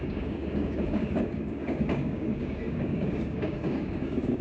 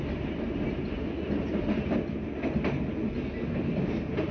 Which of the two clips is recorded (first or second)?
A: second